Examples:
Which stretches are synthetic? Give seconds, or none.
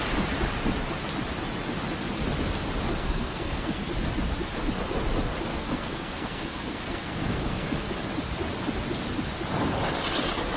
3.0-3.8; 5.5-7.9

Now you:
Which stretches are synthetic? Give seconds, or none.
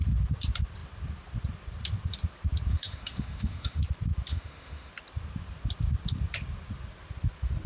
2.7-3.8; 4.3-4.9